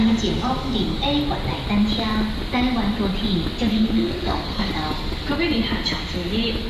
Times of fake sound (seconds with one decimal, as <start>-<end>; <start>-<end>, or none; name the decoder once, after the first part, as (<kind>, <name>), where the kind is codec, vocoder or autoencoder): 3.7-4.7 (codec, SNAC)